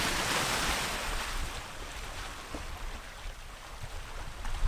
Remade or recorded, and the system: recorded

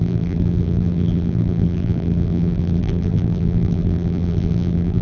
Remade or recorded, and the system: remade, vocoder, BigVGAN v2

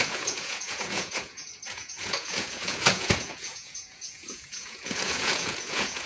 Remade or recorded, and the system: remade, vocoder, Vocos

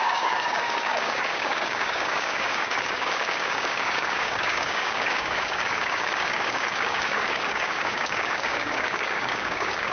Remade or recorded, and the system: remade, codec, DAC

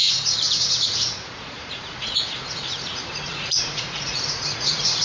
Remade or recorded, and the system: remade, vocoder, Vocos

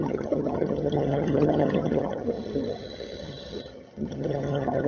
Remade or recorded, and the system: remade, vocoder, HiFi-GAN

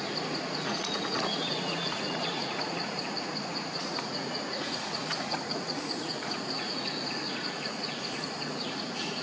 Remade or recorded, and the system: remade, vocoder, Vocos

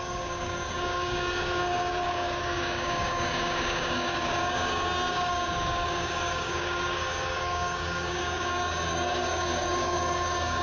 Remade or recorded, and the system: remade, codec, DAC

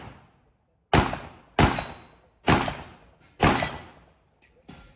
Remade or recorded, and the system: recorded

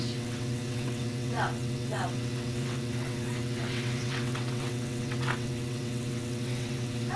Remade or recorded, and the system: remade, vocoder, WaveNeXt